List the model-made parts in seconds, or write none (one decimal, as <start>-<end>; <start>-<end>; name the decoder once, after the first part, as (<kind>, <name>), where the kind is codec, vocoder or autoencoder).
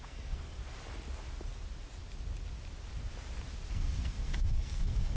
0.0-0.6 (codec, SNAC); 3.7-5.2